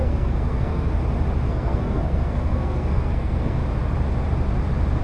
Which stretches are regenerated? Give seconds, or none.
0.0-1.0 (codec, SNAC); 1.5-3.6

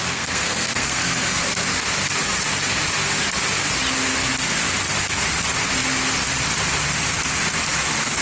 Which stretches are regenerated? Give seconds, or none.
0.0-1.4 (codec, SNAC)

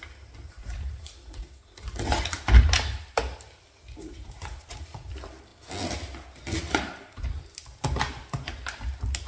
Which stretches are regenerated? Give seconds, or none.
0.6-2.4 (vocoder, Vocos); 3.8-5.1

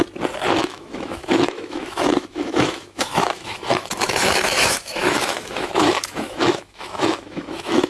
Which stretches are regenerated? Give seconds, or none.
0.6-7.9 (autoencoder, DAC-VAE)

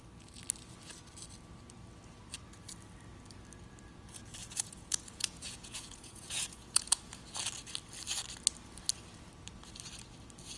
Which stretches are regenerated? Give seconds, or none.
4.4-7.2 (vocoder, Vocos)

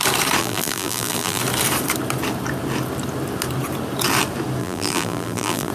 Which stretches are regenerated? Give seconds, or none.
0.4-1.4 (vocoder, BigVGAN v2); 4.6-5.7

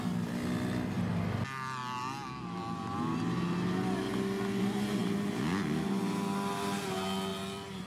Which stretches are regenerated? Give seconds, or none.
7.3-7.9 (vocoder, BigVGAN v2)

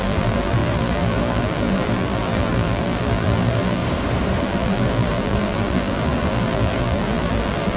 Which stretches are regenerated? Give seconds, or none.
0.0-3.8 (vocoder, BigVGAN v2); 4.4-7.8